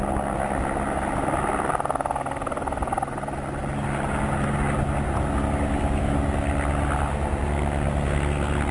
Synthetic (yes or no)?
no